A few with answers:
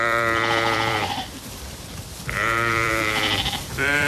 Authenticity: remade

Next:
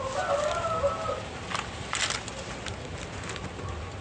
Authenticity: recorded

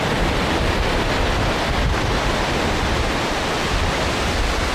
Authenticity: recorded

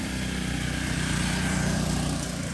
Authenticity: remade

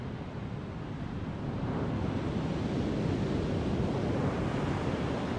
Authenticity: recorded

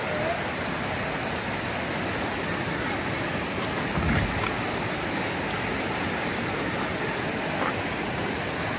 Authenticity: recorded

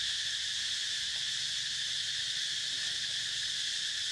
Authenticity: recorded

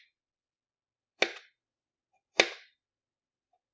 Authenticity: recorded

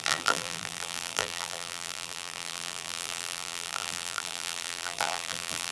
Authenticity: remade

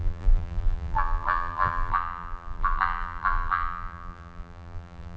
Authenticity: remade